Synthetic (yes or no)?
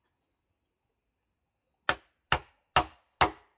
no